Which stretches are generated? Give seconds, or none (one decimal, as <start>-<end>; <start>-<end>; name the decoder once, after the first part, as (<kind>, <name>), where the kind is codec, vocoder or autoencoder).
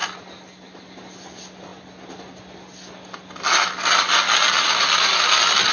none